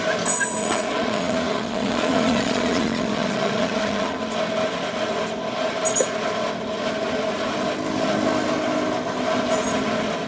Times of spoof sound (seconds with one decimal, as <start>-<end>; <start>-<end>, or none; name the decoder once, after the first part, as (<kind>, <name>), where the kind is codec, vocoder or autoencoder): 0.6-4.2 (vocoder, Vocos)